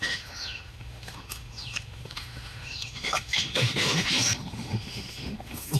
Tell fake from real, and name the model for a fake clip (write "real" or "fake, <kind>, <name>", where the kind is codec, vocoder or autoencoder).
fake, autoencoder, DAC-VAE